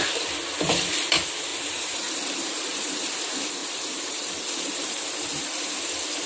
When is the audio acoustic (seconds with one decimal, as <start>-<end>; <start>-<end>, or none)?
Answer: 0.0-1.5; 3.2-3.6; 5.6-6.3